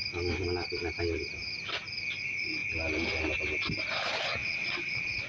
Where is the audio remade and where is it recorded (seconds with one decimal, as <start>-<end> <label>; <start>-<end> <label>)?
0.0-4.4 recorded; 4.4-5.3 remade